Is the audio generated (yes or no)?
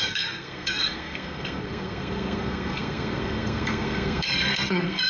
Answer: yes